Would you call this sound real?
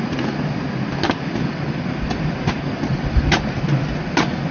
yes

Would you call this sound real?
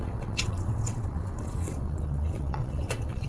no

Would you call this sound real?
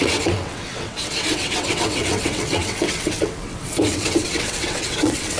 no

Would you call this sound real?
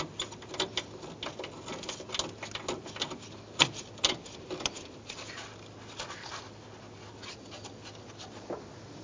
yes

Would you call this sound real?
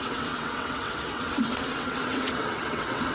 no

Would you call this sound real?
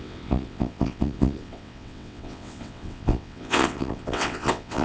no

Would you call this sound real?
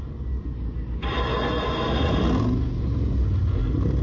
yes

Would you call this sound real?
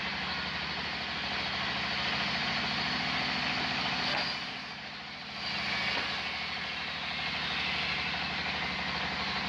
yes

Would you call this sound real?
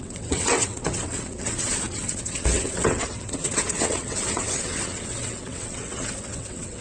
no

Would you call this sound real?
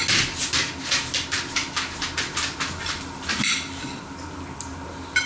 yes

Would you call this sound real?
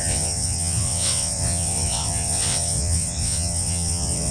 no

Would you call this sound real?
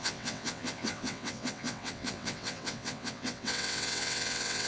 no